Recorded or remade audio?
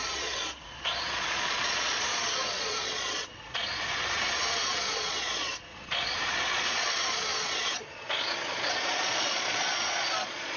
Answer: remade